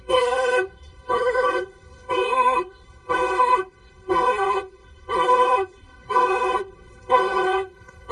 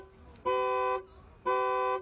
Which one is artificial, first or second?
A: first